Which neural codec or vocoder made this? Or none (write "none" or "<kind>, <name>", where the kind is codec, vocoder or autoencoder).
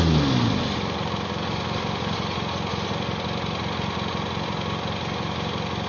none